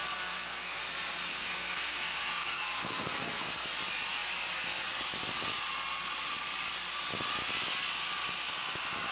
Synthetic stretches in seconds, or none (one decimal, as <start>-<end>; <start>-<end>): 0.0-0.8; 1.3-3.7